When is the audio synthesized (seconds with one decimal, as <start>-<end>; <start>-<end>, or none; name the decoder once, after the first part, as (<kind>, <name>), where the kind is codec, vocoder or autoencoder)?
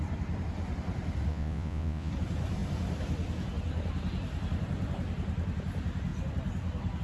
1.3-2.1 (vocoder, Vocos)